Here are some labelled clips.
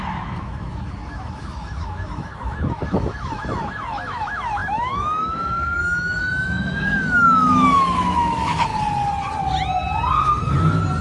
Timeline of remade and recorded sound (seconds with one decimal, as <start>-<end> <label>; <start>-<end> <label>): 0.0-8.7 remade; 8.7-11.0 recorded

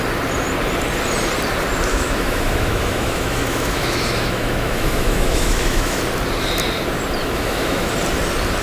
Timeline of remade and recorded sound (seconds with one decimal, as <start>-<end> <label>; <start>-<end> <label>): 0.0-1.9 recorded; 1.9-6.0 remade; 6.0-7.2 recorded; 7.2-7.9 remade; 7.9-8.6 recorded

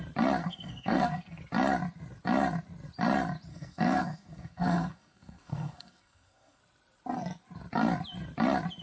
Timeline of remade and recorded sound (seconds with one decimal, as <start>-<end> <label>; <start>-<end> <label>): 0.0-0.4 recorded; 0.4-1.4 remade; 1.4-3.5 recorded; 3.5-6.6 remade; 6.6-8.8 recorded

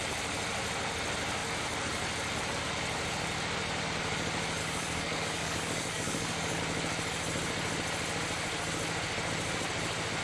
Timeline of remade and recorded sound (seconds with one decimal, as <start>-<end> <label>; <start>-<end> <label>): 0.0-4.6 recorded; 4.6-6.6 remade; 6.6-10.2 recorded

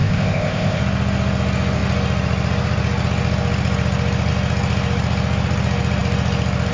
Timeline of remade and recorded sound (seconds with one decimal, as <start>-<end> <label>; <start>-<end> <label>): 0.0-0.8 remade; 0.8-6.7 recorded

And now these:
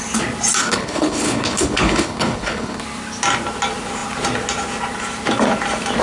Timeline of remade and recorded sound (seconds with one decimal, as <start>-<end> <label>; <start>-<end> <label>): 0.0-0.6 recorded; 0.6-2.8 remade; 2.8-6.0 recorded

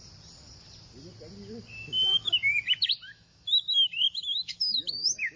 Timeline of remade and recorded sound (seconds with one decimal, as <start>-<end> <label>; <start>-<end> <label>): 0.0-2.1 recorded; 2.1-5.4 remade